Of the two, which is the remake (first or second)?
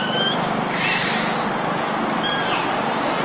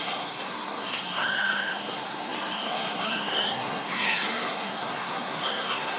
second